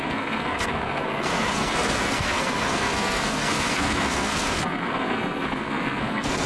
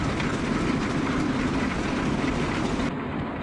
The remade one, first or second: first